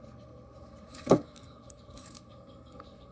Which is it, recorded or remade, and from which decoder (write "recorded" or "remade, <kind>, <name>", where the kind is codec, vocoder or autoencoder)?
remade, codec, SNAC